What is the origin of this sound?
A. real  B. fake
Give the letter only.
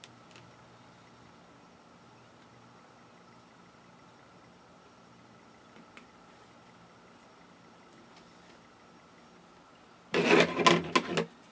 A